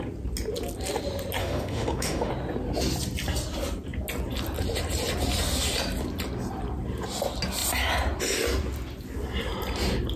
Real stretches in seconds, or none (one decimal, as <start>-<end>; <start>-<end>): 0.0-1.4; 2.3-10.2